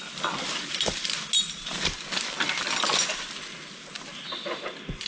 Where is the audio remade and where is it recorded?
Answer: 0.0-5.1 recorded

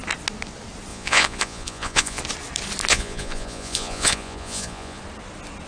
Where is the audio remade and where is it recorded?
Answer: 0.0-0.9 recorded; 0.9-2.2 remade; 2.2-2.9 recorded; 2.9-5.0 remade; 5.0-5.7 recorded

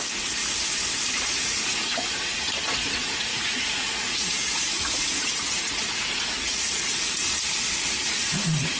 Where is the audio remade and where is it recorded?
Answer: 0.0-0.4 remade; 0.4-1.2 recorded; 1.2-8.8 remade

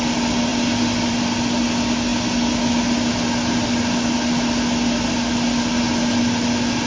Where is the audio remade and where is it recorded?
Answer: 0.0-6.9 recorded

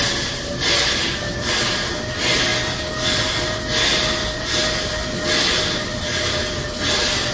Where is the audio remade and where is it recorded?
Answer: 0.0-7.3 recorded